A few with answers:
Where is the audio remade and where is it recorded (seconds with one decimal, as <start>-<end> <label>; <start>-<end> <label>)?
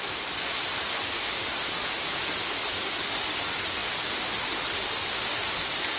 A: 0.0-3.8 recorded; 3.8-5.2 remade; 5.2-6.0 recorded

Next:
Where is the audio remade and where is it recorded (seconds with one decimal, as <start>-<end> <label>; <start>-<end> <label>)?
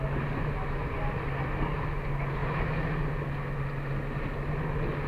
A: 0.0-5.1 recorded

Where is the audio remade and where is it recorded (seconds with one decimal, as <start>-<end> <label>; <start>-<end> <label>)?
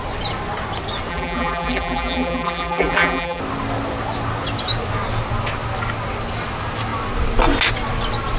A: 0.0-1.1 recorded; 1.1-3.4 remade; 3.4-8.4 recorded